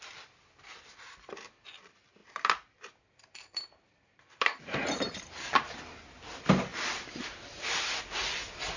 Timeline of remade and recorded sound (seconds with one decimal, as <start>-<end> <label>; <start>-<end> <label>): 0.0-2.2 recorded; 2.2-5.8 remade; 5.8-6.7 recorded; 6.7-8.0 remade; 8.0-8.8 recorded

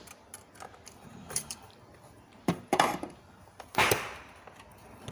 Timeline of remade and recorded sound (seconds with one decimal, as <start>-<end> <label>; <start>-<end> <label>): 0.0-1.1 recorded; 1.1-4.2 remade; 4.2-5.1 recorded

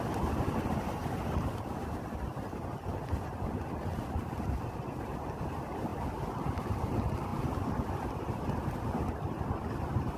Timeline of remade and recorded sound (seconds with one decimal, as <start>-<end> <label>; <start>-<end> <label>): 0.0-1.0 recorded; 1.0-2.0 remade; 2.0-5.9 recorded; 5.9-6.6 remade; 6.6-10.2 recorded

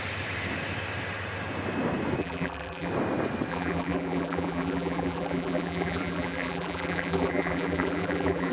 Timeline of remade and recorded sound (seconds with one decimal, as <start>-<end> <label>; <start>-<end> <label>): 0.0-2.2 recorded; 2.2-2.9 remade; 2.9-3.5 recorded; 3.5-8.5 remade